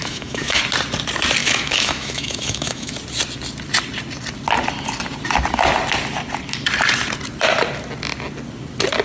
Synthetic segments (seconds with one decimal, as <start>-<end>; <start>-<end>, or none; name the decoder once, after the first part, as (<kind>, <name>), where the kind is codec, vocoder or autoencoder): 0.0-0.6 (autoencoder, DAC-VAE); 1.4-2.9